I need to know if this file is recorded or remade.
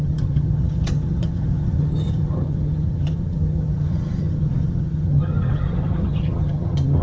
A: remade